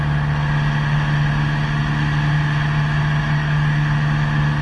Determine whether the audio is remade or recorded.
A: recorded